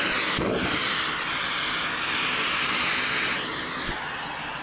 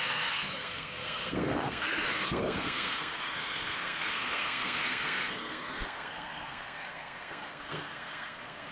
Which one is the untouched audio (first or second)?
first